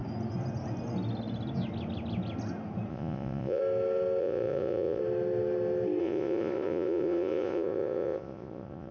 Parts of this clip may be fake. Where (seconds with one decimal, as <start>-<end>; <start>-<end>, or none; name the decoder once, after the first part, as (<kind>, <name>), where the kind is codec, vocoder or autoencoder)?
2.9-3.6 (vocoder, Vocos); 4.2-5.0; 6.0-8.9